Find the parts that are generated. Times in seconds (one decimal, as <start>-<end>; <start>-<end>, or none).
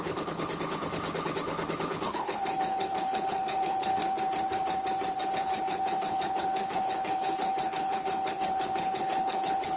0.0-4.0; 5.2-9.8